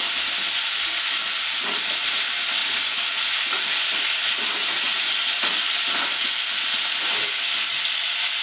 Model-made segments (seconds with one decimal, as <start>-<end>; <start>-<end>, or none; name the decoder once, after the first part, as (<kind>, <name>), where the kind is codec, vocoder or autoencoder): 2.6-3.2 (vocoder, Vocos); 4.6-5.2